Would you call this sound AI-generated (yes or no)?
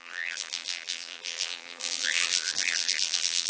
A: yes